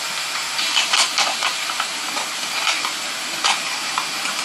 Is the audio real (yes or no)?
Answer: no